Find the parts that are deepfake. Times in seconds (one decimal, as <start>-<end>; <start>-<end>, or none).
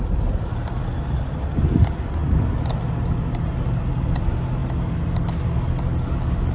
none